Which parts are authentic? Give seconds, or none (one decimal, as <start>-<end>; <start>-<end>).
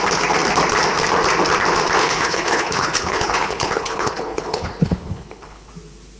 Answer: 0.0-2.0; 5.7-6.2